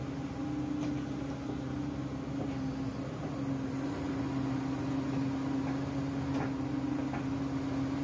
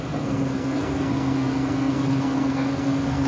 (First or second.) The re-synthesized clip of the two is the second